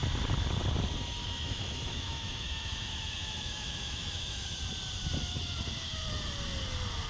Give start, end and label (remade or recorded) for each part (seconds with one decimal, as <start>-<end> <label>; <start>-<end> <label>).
0.0-1.2 recorded; 1.2-4.6 remade; 4.6-7.1 recorded